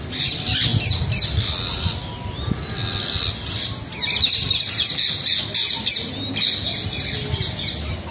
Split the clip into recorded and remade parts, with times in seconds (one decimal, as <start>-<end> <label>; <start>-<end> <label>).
0.0-8.1 recorded